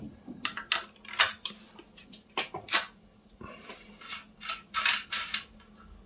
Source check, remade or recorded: recorded